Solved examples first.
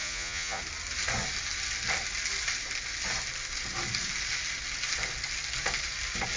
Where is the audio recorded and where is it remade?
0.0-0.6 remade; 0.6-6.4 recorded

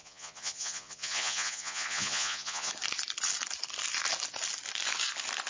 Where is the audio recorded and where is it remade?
0.0-2.7 remade; 2.7-5.5 recorded